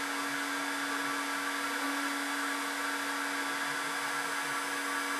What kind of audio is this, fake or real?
real